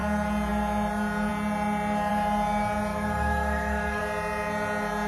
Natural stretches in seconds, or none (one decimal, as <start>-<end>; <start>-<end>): 0.0-2.9; 4.0-5.1